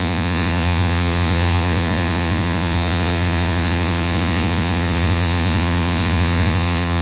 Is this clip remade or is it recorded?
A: remade